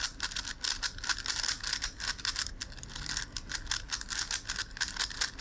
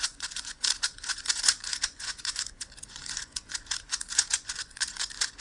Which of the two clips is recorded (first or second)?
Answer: first